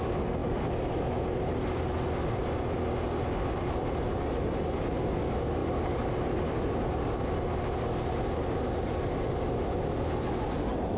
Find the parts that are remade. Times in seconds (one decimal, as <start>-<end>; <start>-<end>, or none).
none